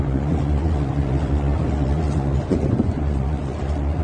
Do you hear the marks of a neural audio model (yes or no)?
yes